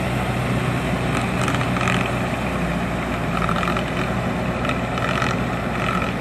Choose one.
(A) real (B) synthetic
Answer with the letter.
A